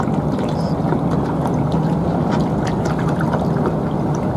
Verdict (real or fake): real